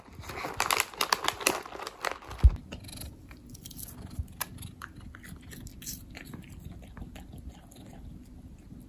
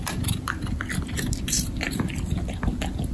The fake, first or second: second